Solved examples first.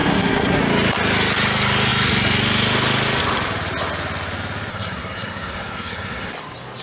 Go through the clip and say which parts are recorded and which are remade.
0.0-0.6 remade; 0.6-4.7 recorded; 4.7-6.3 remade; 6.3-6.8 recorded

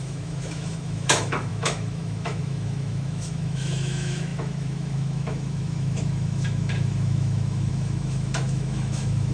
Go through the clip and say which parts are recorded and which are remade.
0.0-9.3 remade

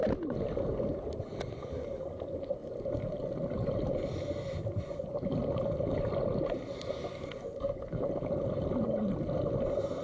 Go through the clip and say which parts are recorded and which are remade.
0.0-2.6 recorded; 2.6-7.2 remade; 7.2-10.0 recorded

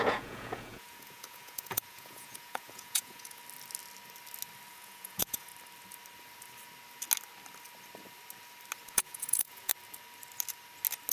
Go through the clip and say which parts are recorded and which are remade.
0.0-3.4 remade; 3.4-4.7 recorded; 4.7-5.5 remade; 5.5-8.9 recorded; 8.9-9.7 remade; 9.7-11.1 recorded

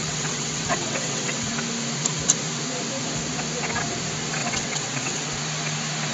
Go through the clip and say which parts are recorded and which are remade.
0.0-1.5 remade; 1.5-4.4 recorded; 4.4-5.4 remade; 5.4-6.1 recorded